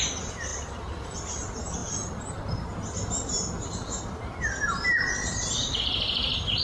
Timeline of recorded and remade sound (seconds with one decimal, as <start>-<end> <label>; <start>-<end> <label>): 0.0-6.6 recorded